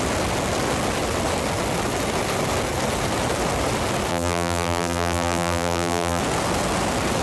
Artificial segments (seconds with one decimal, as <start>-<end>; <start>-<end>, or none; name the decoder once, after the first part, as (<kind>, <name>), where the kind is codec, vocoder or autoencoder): 4.1-6.2 (vocoder, BigVGAN v2)